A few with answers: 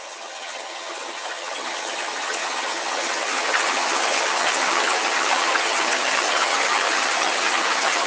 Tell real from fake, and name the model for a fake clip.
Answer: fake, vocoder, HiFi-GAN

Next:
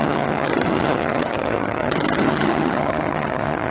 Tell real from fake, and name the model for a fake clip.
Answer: fake, vocoder, HiFi-GAN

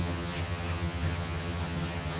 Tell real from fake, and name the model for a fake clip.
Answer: fake, vocoder, HiFi-GAN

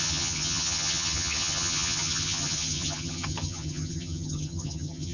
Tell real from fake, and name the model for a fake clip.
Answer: fake, vocoder, HiFi-GAN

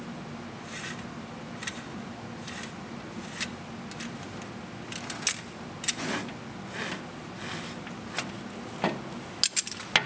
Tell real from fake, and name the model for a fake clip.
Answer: real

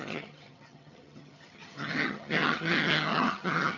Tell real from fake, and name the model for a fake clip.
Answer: fake, vocoder, HiFi-GAN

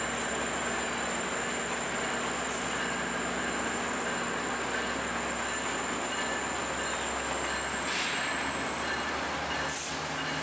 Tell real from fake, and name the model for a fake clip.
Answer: real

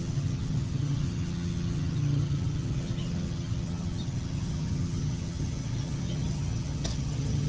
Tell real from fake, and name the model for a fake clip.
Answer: fake, vocoder, HiFi-GAN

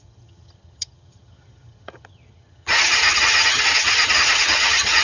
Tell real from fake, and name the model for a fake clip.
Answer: fake, vocoder, HiFi-GAN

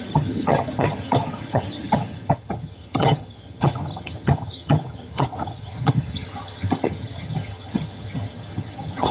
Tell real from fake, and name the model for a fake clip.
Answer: fake, vocoder, HiFi-GAN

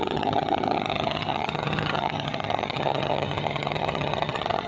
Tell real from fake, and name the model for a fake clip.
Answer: fake, vocoder, HiFi-GAN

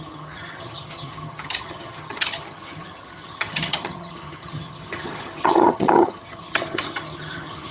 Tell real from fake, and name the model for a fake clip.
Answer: fake, vocoder, HiFi-GAN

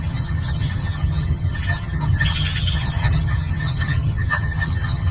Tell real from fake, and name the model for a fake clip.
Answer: fake, vocoder, HiFi-GAN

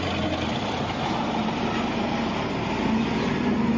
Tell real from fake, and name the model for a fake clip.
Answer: real